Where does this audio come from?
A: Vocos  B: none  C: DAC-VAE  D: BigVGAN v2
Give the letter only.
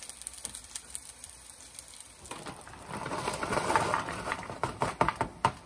D